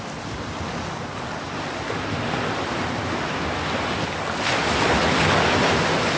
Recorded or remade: recorded